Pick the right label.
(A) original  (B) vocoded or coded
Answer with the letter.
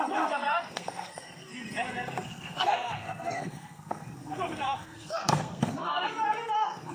B